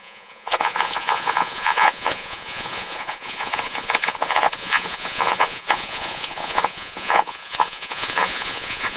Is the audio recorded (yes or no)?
no